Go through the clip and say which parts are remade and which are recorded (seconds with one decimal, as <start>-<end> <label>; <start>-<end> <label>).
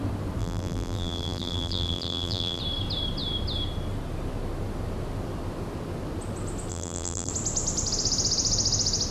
0.0-0.4 recorded; 0.4-2.6 remade; 2.6-6.7 recorded; 6.7-7.3 remade; 7.3-9.1 recorded